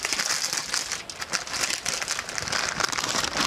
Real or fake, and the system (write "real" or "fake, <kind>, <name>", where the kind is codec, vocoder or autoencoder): real